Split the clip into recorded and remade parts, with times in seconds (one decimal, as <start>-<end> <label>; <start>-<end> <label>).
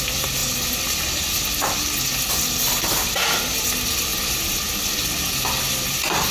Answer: 0.0-6.3 recorded